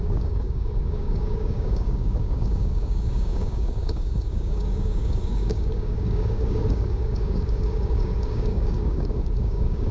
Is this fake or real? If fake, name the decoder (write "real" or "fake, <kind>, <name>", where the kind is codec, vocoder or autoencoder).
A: fake, codec, DAC